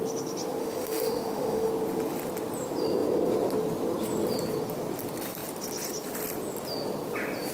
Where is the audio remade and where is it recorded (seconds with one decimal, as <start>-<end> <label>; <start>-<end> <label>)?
0.0-0.6 recorded; 0.6-1.7 remade; 1.7-7.5 recorded